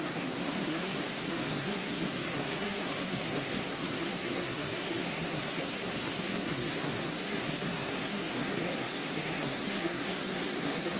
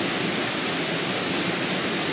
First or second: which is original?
second